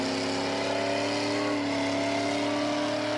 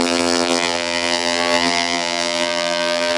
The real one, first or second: first